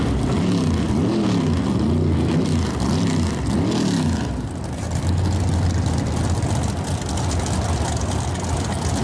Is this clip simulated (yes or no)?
no